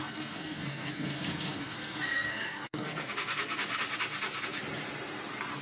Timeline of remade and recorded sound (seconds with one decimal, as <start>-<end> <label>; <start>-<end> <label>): 0.0-3.4 remade; 3.4-5.6 recorded